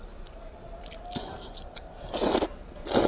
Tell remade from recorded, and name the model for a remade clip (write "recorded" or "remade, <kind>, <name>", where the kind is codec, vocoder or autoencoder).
recorded